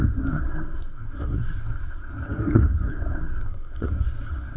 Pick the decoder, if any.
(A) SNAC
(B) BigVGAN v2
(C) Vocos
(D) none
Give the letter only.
A